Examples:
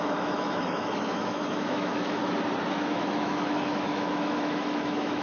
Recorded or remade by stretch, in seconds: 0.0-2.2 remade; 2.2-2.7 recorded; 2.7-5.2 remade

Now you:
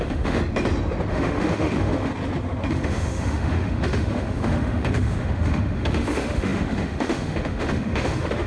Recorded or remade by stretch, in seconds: 0.0-0.4 remade; 0.4-1.1 recorded; 1.1-2.1 remade; 2.1-2.7 recorded; 2.7-8.5 remade